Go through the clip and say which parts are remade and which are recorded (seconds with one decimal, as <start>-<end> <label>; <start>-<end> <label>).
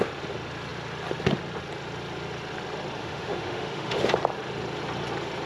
0.0-3.0 recorded; 3.0-4.0 remade; 4.0-5.5 recorded